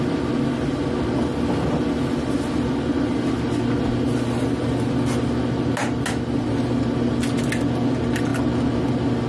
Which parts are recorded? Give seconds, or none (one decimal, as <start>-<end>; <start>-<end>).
0.0-6.5; 7.2-8.3; 8.9-9.3